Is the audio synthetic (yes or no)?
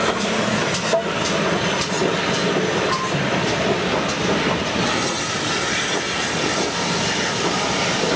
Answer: no